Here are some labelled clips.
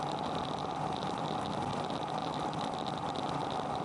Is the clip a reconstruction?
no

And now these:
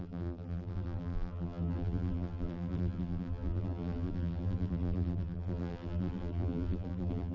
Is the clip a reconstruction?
yes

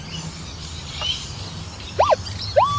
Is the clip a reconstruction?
no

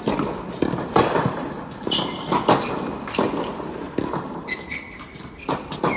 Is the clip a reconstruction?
no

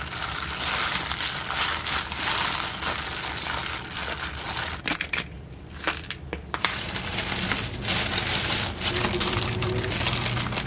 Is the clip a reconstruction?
no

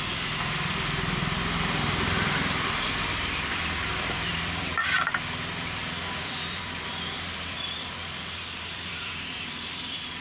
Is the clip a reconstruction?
yes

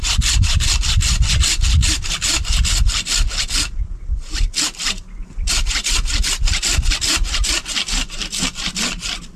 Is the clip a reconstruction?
no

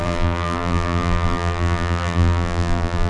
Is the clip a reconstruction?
yes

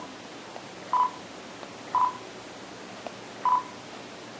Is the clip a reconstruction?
no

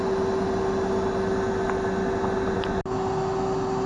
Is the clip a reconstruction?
no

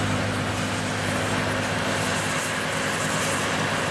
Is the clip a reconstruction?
no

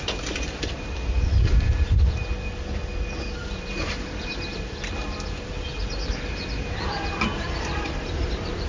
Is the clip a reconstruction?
yes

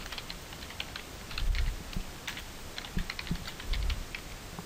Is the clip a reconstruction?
no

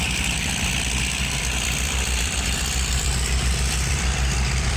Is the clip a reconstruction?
yes